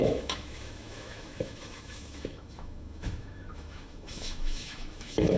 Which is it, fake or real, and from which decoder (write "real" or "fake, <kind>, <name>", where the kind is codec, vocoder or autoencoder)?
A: fake, autoencoder, DAC-VAE